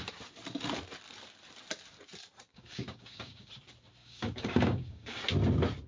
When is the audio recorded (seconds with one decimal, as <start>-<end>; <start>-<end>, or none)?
0.0-2.5; 3.5-4.0; 5.2-5.9